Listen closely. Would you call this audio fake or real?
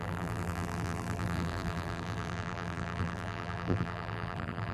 fake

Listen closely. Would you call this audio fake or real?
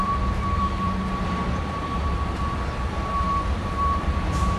fake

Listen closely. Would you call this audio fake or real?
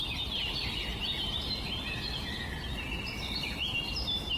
real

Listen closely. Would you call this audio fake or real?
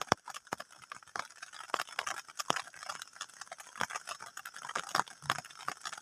real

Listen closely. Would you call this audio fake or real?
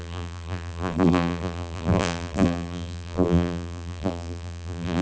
fake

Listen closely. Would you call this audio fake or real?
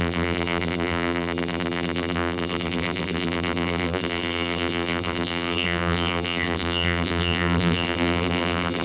fake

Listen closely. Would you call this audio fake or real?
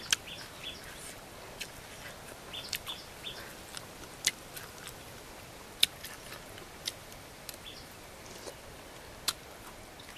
real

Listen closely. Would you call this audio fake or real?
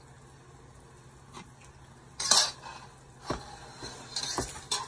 real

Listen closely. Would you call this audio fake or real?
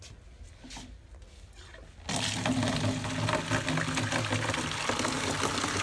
real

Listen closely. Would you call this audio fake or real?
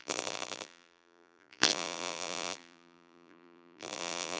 fake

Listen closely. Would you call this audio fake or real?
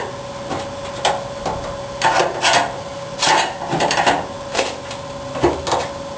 real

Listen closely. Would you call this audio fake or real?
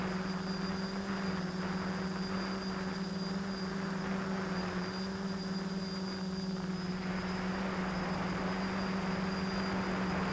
real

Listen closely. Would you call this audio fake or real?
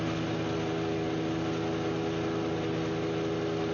real